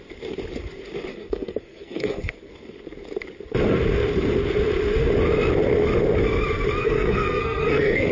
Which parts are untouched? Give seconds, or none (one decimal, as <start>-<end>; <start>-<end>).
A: 0.0-1.1; 2.5-6.8